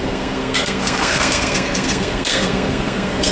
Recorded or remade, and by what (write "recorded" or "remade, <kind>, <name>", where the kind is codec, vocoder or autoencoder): remade, codec, SNAC